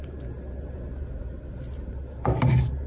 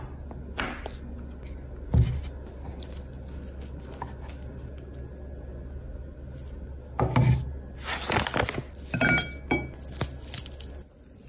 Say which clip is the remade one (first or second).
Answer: first